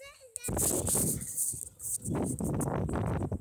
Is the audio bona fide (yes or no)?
yes